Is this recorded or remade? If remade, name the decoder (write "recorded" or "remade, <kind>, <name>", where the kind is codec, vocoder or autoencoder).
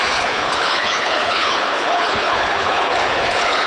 remade, codec, HILCodec